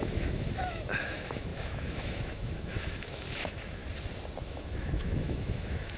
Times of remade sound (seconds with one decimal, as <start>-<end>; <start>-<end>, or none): 0.0-3.8; 4.4-6.0